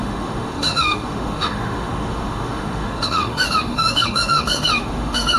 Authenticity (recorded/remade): remade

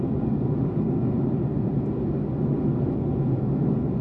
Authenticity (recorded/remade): recorded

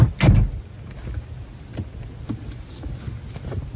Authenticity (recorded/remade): recorded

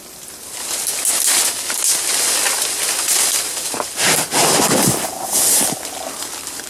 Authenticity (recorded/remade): recorded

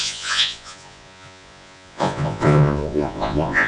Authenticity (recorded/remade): remade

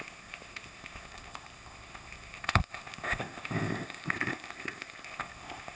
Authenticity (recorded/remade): remade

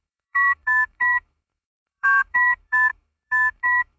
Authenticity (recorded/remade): remade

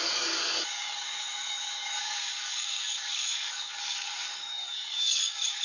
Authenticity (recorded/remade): remade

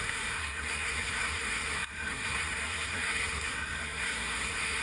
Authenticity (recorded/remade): remade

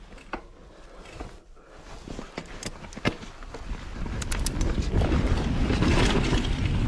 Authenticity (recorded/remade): recorded